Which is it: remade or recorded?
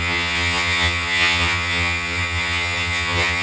remade